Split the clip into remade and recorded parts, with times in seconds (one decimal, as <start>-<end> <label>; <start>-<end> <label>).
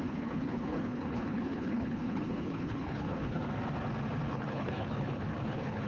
0.0-3.4 remade; 3.4-4.3 recorded; 4.3-5.9 remade